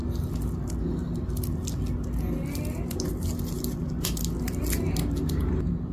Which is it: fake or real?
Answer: real